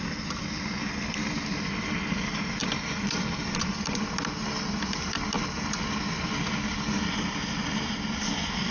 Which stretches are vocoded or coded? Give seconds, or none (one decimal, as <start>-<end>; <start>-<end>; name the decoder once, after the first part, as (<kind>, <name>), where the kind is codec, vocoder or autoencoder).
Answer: none